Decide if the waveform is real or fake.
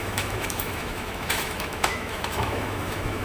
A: fake